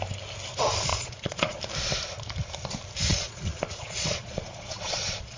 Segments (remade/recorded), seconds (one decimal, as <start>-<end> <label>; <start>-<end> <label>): 0.0-0.9 recorded; 0.9-1.6 remade; 1.6-3.1 recorded; 3.1-5.4 remade